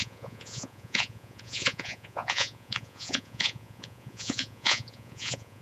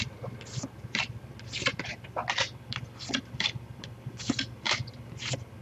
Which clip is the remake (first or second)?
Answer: first